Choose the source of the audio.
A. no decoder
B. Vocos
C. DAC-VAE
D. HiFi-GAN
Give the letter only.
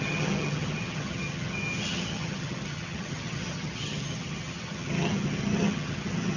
D